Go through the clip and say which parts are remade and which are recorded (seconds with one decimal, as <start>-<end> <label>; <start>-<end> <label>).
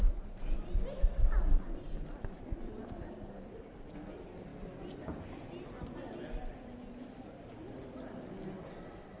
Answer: 0.0-9.2 recorded